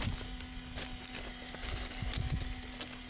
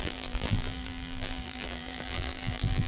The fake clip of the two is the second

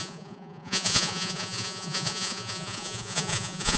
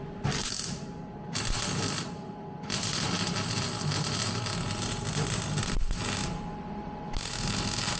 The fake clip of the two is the first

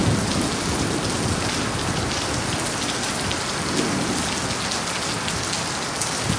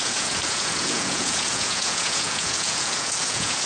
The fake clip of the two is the second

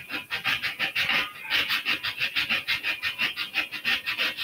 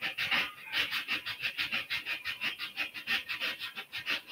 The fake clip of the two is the second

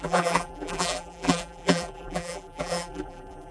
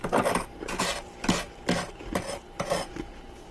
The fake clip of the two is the first